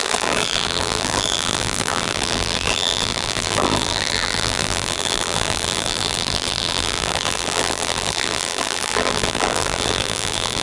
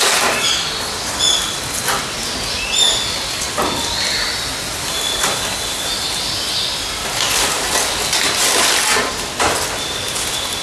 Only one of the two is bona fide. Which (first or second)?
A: second